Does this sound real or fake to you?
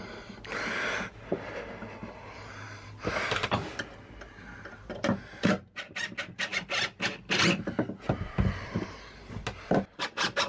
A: real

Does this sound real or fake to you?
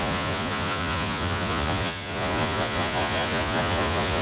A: fake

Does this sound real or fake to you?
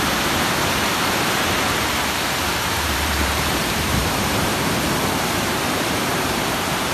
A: fake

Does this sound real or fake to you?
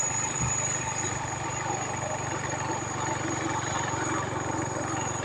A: real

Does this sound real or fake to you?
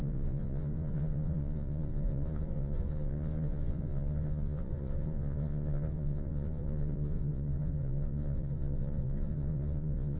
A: fake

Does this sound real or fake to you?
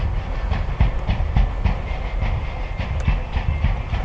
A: real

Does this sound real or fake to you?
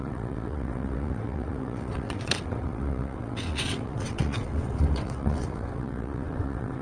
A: fake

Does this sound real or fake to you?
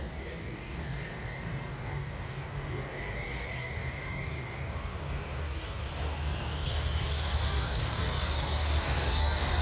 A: fake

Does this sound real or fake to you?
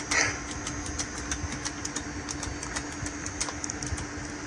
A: real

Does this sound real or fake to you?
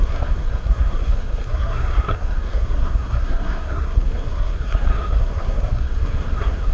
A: fake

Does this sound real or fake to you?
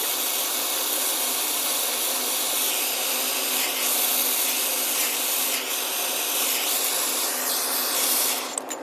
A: real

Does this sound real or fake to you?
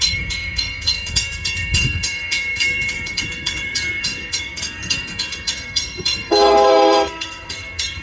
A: fake